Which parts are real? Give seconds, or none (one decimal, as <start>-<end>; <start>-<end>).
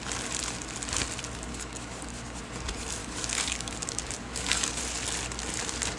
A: 0.0-1.5; 2.4-3.0; 4.8-6.0